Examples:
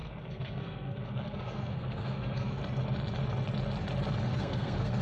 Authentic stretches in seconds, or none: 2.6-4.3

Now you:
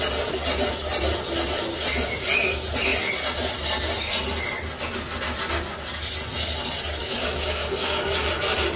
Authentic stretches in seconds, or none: 0.0-7.0; 8.3-8.8

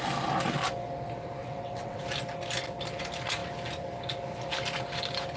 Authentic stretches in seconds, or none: 0.0-1.4; 2.0-5.4

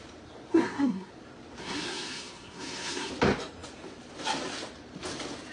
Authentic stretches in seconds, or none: 0.0-0.5; 1.1-1.6; 3.1-5.5

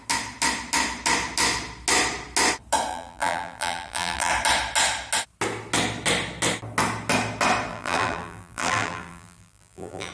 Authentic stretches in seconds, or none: 0.0-2.9; 4.3-7.7